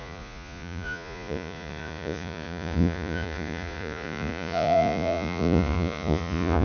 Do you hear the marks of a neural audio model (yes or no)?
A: yes